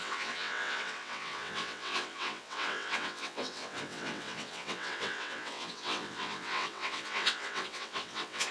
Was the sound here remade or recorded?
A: remade